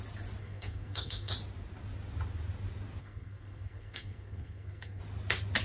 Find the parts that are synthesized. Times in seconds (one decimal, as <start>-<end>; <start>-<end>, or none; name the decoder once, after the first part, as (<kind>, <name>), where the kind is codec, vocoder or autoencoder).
0.4-1.3 (codec, SNAC); 3.0-5.0